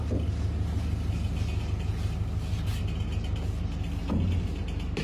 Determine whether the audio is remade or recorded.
recorded